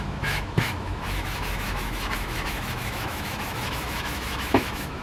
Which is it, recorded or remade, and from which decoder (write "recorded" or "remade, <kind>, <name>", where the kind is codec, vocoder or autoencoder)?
remade, autoencoder, DAC-VAE